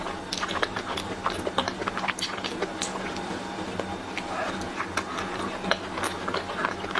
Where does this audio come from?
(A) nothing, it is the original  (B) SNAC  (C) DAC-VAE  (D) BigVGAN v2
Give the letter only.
A